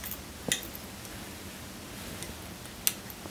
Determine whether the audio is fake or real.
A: real